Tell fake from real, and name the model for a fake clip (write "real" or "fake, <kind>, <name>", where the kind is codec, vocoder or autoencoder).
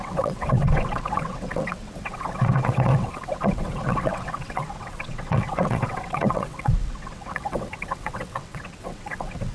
fake, vocoder, WaveNeXt